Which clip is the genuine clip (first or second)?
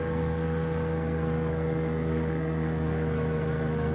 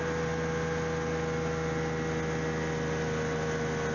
second